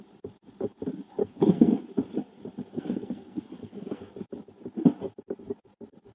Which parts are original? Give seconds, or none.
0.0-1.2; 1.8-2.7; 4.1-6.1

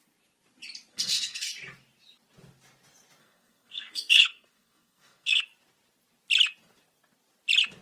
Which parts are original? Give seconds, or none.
0.0-0.9; 1.5-3.2; 5.4-7.8

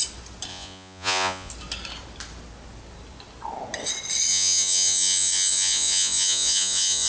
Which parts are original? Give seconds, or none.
0.0-0.5; 1.5-4.3

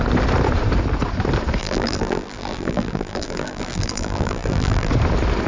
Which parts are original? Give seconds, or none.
0.0-1.6; 4.9-5.5

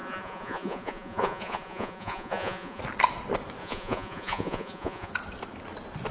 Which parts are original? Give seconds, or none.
2.8-3.6; 5.1-6.1